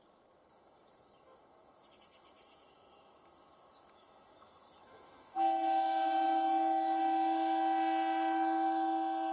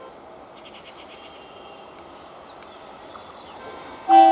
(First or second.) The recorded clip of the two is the second